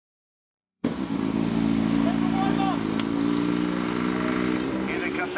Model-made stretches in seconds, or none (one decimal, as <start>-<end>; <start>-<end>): 0.0-0.9